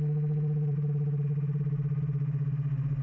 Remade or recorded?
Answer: recorded